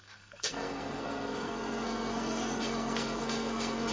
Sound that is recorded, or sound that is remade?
remade